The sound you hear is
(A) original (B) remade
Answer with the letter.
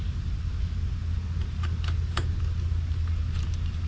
A